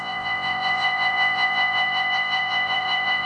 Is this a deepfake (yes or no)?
yes